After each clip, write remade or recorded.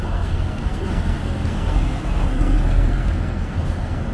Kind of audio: remade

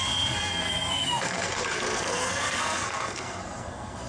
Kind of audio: remade